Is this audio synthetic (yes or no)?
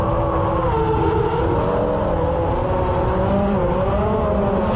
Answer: no